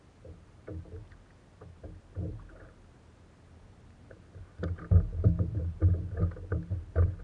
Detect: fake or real real